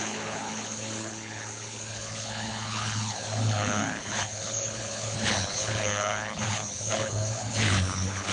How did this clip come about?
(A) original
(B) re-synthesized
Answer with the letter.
B